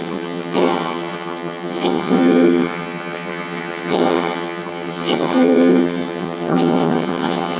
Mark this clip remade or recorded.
remade